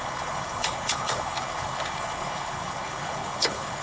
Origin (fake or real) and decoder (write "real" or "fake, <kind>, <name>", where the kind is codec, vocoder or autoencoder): fake, codec, HILCodec